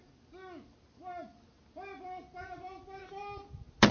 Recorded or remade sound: recorded